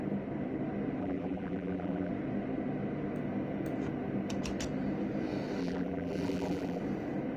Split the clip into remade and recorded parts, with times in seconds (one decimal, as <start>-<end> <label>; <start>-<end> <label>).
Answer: 0.0-1.0 recorded; 1.0-2.1 remade; 2.1-5.6 recorded; 5.6-6.8 remade; 6.8-7.4 recorded